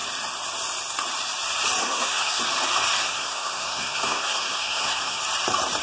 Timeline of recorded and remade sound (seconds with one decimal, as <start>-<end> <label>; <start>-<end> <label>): 0.0-1.8 recorded; 1.8-2.4 remade; 2.4-3.0 recorded; 3.0-5.2 remade; 5.2-5.8 recorded